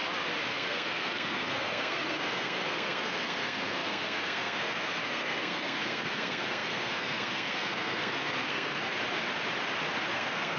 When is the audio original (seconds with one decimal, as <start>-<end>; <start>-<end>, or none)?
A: 0.0-0.5; 8.9-10.1